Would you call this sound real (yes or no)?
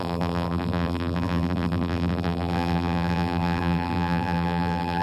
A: no